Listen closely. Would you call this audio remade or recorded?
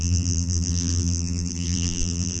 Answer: remade